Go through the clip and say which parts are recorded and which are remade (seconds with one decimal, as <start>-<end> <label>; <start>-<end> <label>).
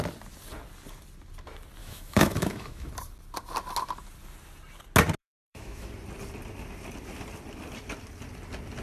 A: 0.0-1.8 recorded; 1.8-2.9 remade; 2.9-5.2 recorded; 5.2-5.9 remade; 5.9-8.8 recorded